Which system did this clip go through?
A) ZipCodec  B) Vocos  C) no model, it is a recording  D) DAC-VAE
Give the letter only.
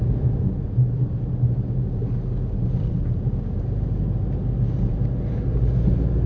C